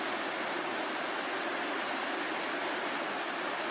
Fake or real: real